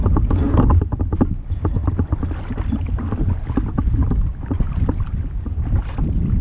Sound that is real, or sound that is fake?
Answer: real